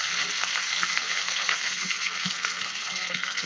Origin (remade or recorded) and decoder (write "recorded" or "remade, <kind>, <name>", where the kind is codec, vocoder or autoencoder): remade, codec, SNAC